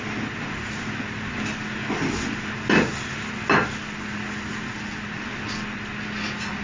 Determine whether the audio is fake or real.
real